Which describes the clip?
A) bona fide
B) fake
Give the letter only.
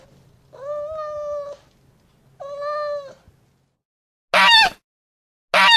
A